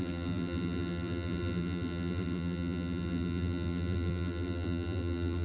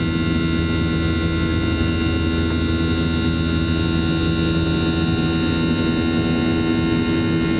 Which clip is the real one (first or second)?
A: second